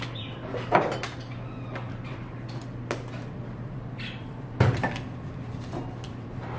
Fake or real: fake